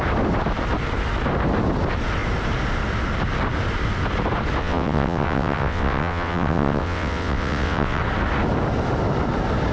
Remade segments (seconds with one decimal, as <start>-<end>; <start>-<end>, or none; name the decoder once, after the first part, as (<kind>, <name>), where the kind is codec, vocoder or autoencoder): 4.6-8.0 (vocoder, WaveNeXt)